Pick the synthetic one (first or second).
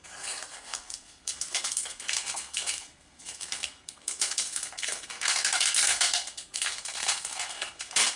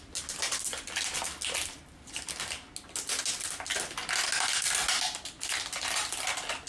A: first